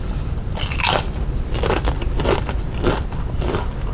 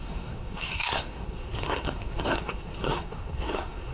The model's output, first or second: second